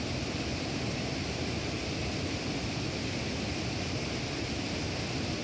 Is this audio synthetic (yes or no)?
no